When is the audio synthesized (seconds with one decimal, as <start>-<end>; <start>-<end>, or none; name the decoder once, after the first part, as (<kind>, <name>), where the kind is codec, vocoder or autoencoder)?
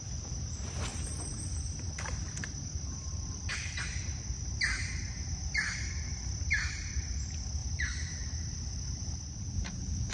0.9-4.2 (vocoder, BigVGAN v2); 7.6-10.1